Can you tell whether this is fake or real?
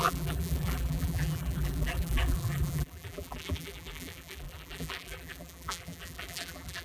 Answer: fake